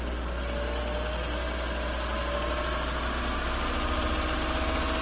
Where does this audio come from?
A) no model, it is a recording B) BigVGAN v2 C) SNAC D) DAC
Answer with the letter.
A